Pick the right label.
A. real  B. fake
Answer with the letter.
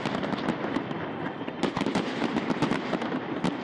A